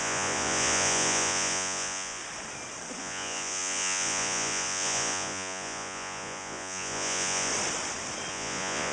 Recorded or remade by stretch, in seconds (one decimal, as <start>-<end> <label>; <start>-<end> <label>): 0.0-2.2 remade; 2.2-3.0 recorded; 3.0-7.5 remade; 7.5-8.3 recorded; 8.3-8.9 remade